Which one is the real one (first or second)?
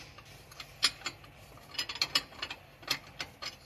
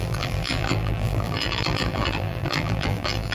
first